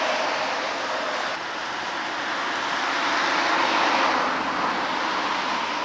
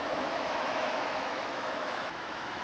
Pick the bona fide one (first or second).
first